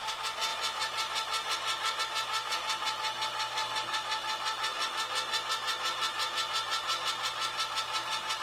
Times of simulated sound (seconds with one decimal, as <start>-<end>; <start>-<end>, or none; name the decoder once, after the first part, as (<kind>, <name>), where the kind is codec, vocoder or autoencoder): 0.5-2.0 (vocoder, BigVGAN v2)